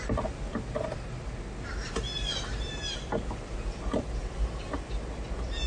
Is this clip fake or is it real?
real